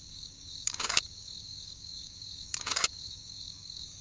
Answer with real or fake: fake